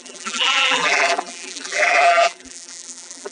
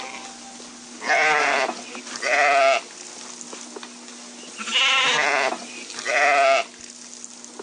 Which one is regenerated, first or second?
first